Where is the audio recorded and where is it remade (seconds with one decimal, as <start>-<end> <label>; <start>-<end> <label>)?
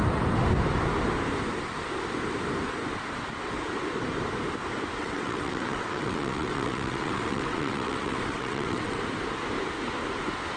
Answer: 0.0-5.0 recorded; 5.0-9.0 remade; 9.0-10.6 recorded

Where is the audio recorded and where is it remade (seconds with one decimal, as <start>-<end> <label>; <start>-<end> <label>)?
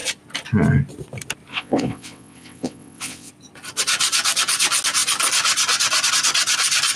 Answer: 0.0-1.5 recorded; 1.5-3.3 remade; 3.3-7.0 recorded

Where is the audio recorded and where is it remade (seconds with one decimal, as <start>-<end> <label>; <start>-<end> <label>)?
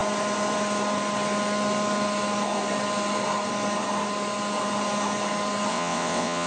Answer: 0.0-5.7 recorded; 5.7-6.5 remade